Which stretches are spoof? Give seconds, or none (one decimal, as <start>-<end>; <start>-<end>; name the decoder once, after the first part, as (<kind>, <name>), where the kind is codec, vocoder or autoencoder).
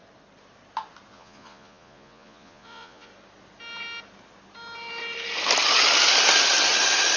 1.1-3.1 (vocoder, Vocos)